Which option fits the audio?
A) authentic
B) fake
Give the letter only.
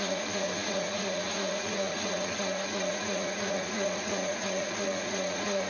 B